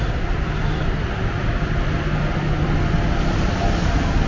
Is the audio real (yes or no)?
yes